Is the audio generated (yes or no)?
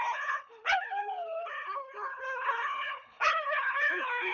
yes